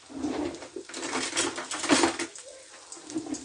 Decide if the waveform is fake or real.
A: real